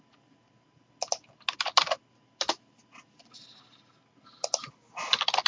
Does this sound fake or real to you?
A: real